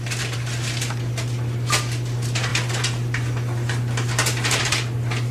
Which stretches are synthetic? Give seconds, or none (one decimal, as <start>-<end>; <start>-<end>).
none